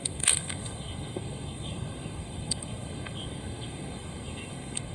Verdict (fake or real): fake